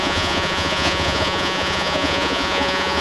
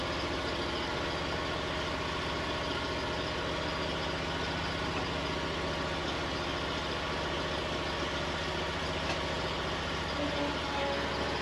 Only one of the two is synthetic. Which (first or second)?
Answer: first